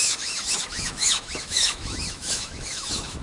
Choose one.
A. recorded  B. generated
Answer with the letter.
B